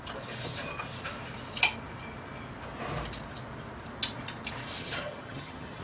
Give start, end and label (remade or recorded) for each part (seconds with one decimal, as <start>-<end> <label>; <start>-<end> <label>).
0.0-4.8 recorded; 4.8-5.8 remade